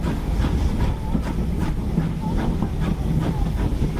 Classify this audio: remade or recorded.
recorded